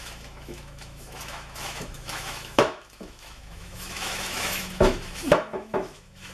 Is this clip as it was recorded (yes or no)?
no